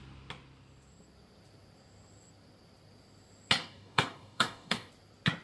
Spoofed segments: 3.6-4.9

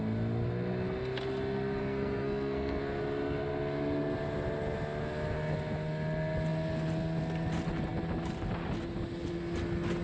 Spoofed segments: 1.8-3.0

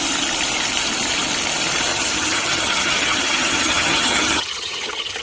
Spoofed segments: 1.9-5.2

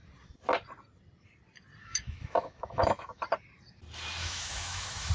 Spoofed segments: 1.8-3.2; 4.2-5.1

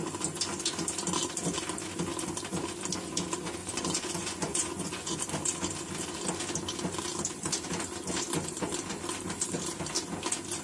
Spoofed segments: 3.6-5.2

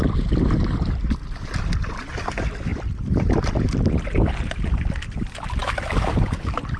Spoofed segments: 2.7-4.6

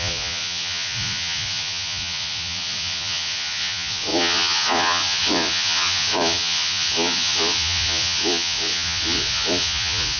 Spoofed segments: 0.0-10.2

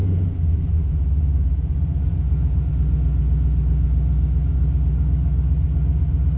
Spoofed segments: 0.0-2.7